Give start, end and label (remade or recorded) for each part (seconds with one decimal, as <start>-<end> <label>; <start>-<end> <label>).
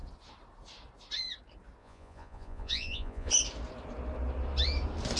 0.0-1.8 recorded; 1.8-3.3 remade; 3.3-5.2 recorded